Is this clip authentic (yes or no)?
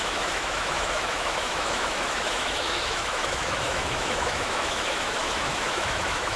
no